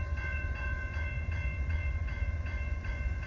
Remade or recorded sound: remade